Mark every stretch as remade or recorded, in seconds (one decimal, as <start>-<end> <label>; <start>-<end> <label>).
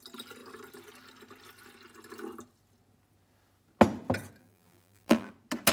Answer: 0.0-4.4 recorded; 4.4-5.3 remade; 5.3-5.7 recorded